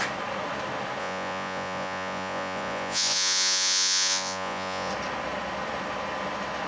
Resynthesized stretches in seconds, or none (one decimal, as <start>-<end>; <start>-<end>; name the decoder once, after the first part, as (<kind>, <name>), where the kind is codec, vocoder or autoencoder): 1.0-4.9 (vocoder, Vocos)